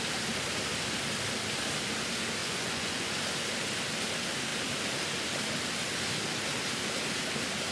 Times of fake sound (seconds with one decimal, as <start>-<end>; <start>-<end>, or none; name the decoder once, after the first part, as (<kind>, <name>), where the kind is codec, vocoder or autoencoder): 2.4-3.1 (vocoder, Vocos)